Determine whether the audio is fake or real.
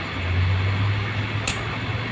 real